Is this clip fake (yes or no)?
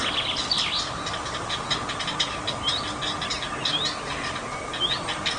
no